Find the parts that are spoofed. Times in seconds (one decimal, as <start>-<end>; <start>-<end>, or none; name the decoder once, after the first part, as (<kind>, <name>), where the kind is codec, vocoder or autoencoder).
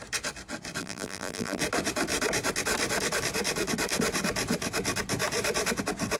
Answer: 0.8-1.6 (vocoder, BigVGAN v2)